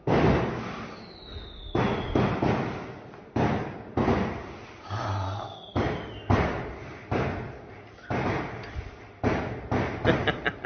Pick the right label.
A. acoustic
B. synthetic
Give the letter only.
A